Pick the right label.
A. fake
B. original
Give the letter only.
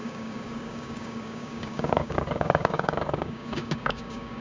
A